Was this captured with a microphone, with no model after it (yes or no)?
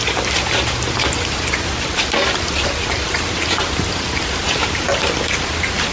no